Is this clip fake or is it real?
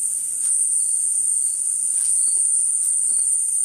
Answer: real